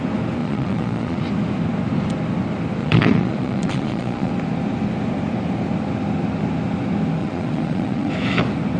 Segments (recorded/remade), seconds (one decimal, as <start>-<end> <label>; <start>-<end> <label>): 0.0-0.4 recorded; 0.4-1.2 remade; 1.2-2.8 recorded; 2.8-4.3 remade; 4.3-7.2 recorded; 7.2-8.1 remade; 8.1-8.8 recorded